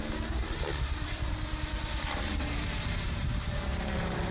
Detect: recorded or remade remade